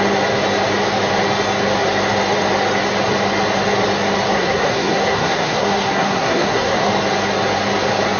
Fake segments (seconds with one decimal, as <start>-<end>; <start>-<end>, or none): 4.3-6.9